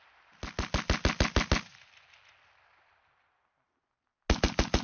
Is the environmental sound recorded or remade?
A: recorded